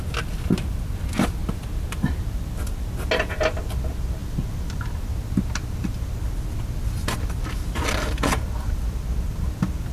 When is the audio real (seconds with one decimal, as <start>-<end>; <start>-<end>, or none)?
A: 0.0-1.4; 2.2-9.9